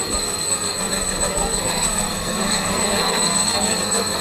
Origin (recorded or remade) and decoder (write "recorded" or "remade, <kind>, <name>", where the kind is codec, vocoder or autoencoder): remade, codec, SNAC